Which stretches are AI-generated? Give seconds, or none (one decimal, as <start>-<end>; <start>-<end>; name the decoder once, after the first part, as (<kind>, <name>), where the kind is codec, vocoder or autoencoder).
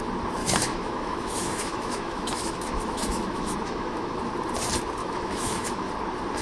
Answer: 0.4-4.2 (autoencoder, DAC-VAE); 5.0-5.9